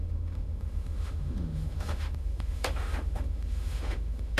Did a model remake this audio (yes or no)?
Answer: yes